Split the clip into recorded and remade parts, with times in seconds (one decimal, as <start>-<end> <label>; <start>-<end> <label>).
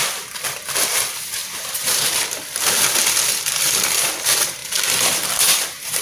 0.0-1.4 recorded; 1.4-2.2 remade; 2.2-4.6 recorded; 4.6-6.0 remade